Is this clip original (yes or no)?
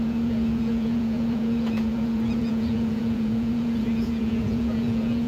no